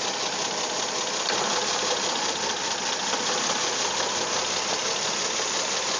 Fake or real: real